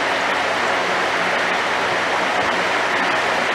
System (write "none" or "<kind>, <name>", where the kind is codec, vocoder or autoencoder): none